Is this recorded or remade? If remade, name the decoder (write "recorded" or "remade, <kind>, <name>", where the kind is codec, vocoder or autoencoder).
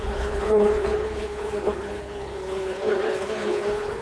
remade, codec, HILCodec